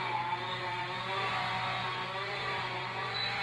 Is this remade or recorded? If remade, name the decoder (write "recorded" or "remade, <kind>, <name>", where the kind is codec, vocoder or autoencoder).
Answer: remade, vocoder, Vocos